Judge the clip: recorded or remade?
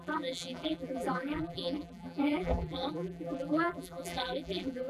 remade